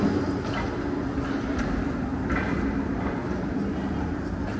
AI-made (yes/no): no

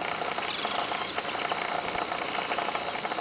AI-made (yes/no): yes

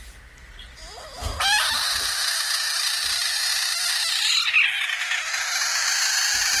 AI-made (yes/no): no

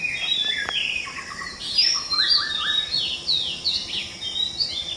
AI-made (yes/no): no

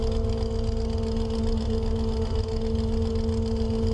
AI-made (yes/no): no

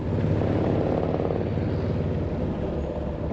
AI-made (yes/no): no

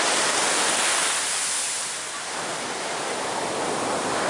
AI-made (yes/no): no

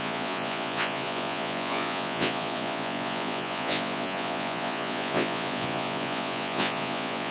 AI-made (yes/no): yes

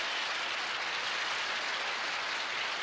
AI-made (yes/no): no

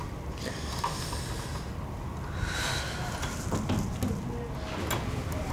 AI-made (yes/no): no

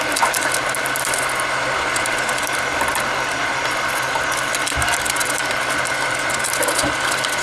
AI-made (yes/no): no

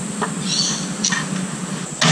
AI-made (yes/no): no